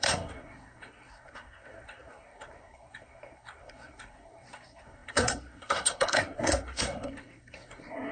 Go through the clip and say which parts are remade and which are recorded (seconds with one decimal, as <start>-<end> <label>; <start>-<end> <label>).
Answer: 0.0-8.1 remade